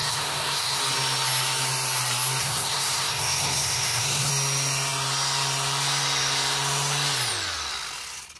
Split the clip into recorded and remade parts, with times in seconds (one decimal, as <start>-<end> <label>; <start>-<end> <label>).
0.0-0.8 remade; 0.8-2.4 recorded; 2.4-4.3 remade; 4.3-8.4 recorded